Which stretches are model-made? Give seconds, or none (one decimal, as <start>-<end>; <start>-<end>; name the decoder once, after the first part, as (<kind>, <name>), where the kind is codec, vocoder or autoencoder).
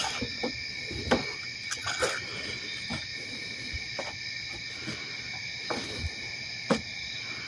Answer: none